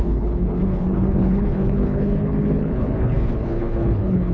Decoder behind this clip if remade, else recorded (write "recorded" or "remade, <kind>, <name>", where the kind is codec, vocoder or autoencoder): remade, codec, HILCodec